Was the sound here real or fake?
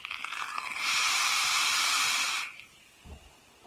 real